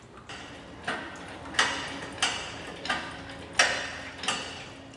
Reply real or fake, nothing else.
real